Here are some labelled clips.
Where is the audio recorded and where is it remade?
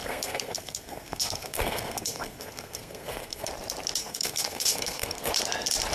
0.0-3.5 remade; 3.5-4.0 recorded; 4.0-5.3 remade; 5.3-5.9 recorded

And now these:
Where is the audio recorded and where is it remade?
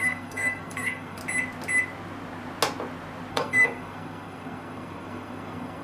0.0-1.2 remade; 1.2-3.3 recorded; 3.3-5.8 remade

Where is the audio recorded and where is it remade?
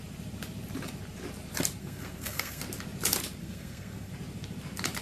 0.0-1.8 recorded; 1.8-2.6 remade; 2.6-3.4 recorded; 3.4-4.1 remade; 4.1-5.0 recorded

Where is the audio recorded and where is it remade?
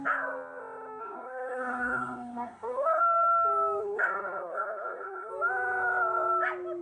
0.0-1.0 recorded; 1.0-3.0 remade; 3.0-3.8 recorded; 3.8-5.3 remade; 5.3-6.8 recorded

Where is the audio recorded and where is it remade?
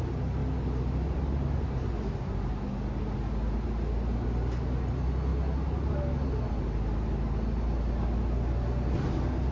0.0-9.5 recorded